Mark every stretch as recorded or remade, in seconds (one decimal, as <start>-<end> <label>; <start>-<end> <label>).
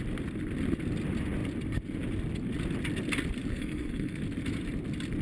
0.0-3.5 recorded; 3.5-4.2 remade; 4.2-5.2 recorded